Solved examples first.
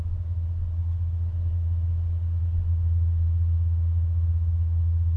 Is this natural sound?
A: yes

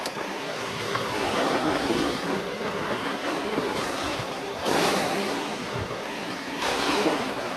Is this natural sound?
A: no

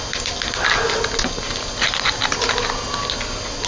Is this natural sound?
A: yes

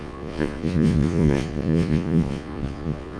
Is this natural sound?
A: no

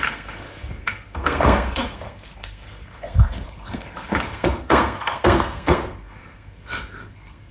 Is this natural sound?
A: no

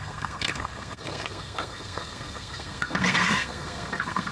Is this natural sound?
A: no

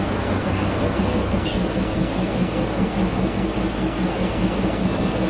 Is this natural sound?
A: no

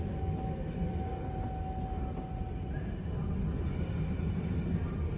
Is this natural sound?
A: yes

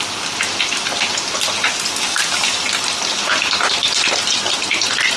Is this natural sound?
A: yes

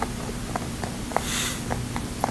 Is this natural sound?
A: no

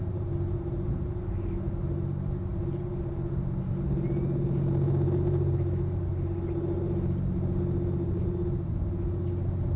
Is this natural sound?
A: yes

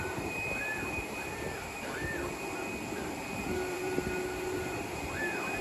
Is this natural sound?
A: no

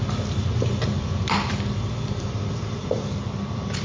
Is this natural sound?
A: no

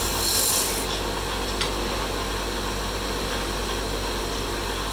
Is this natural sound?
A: yes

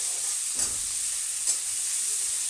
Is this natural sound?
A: yes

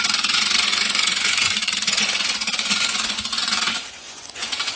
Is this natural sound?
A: no